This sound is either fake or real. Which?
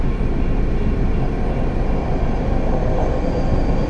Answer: fake